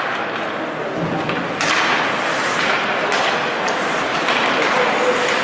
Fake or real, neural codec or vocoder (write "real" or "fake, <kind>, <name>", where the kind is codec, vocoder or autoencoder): real